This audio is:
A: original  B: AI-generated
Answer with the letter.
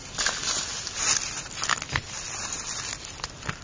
A